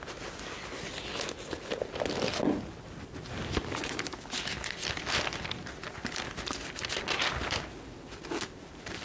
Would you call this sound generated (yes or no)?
no